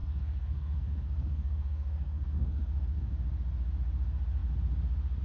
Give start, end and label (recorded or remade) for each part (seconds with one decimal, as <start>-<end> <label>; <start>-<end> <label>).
0.0-3.1 remade; 3.1-5.2 recorded

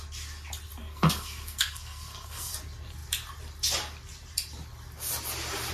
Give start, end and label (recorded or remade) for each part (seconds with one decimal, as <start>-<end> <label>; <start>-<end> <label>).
0.0-0.8 recorded; 0.8-2.5 remade; 2.5-5.7 recorded

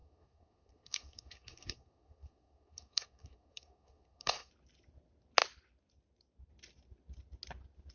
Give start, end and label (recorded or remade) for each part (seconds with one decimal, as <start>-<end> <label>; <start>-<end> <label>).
0.0-4.5 remade; 4.5-7.9 recorded

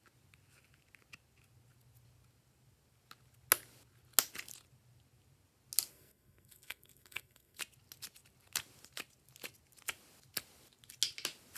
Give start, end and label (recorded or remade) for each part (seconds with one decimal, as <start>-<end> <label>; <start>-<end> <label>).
0.0-5.9 recorded; 5.9-7.6 remade; 7.6-11.6 recorded

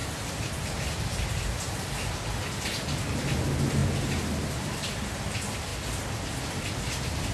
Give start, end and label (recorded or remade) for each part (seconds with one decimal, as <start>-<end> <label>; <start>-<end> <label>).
0.0-7.3 recorded

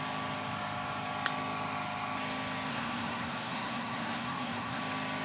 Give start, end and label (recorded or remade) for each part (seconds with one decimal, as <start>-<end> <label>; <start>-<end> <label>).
0.0-2.7 recorded; 2.7-4.8 remade; 4.8-5.2 recorded

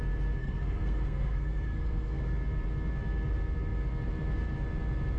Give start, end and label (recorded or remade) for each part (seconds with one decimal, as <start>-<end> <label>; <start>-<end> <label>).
0.0-0.4 recorded; 0.4-2.2 remade; 2.2-5.2 recorded